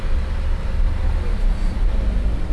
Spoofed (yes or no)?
no